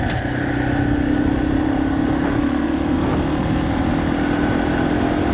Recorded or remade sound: recorded